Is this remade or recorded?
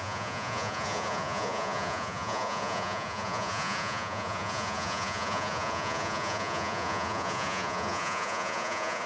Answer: remade